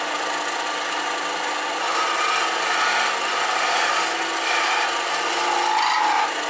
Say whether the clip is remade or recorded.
recorded